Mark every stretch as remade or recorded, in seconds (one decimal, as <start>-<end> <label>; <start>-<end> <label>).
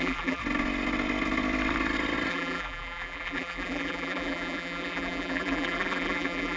0.0-0.4 remade; 0.4-2.3 recorded; 2.3-6.6 remade